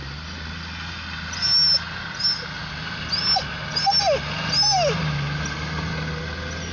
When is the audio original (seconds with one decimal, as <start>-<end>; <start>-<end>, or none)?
0.0-6.7